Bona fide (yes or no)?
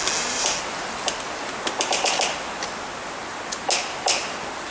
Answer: yes